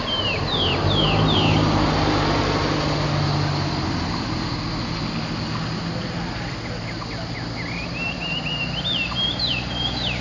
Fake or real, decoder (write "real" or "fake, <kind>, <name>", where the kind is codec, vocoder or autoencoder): real